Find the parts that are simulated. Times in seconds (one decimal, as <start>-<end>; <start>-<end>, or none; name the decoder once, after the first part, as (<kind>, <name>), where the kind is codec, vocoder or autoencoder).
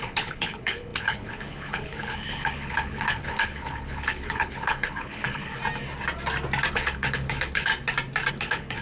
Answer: 0.0-5.6 (codec, HILCodec); 6.7-7.7; 8.3-8.8